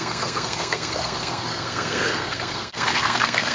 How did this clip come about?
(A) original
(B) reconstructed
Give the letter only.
B